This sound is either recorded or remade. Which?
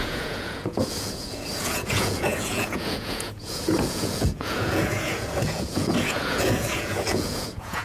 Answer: remade